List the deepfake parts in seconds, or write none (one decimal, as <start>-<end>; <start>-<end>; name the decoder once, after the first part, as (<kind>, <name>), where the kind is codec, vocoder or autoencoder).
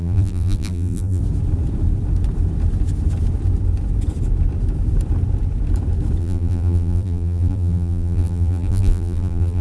0.0-1.2 (vocoder, BigVGAN v2); 6.2-9.6